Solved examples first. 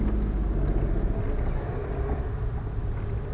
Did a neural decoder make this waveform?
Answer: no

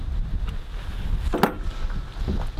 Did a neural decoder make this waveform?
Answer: no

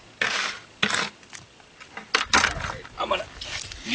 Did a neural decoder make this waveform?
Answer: no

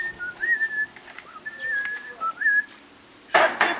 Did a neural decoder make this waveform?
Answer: no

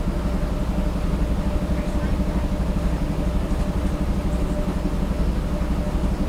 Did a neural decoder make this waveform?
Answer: no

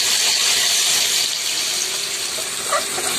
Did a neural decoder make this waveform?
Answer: no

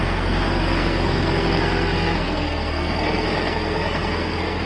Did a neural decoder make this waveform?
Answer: yes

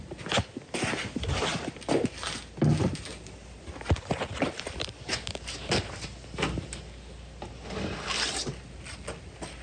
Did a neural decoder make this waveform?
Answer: no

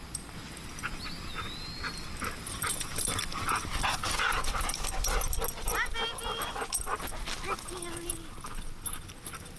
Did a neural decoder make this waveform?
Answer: no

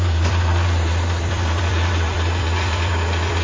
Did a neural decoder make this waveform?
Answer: yes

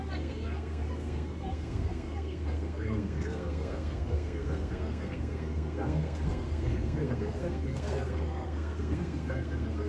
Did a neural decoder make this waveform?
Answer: yes